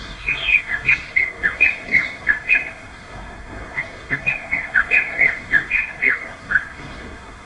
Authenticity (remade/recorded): remade